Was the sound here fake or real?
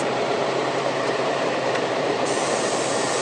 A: fake